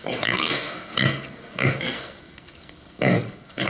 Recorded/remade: remade